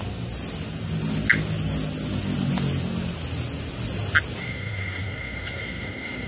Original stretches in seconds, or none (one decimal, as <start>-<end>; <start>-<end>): 0.0-4.4